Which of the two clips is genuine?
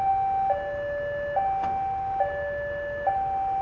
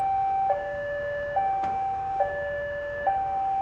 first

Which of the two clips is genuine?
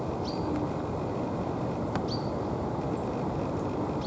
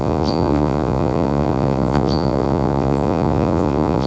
first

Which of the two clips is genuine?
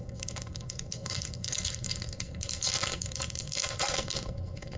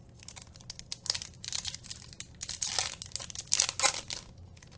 second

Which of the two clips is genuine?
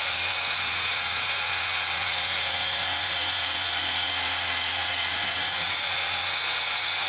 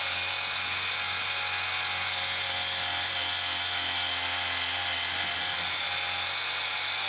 second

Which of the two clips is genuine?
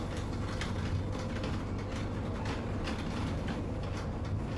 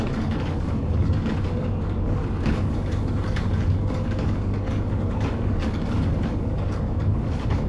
first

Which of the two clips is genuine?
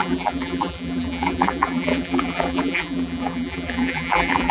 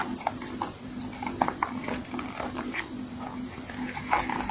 second